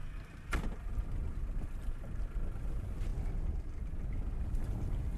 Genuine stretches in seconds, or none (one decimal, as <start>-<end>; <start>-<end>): 0.0-5.2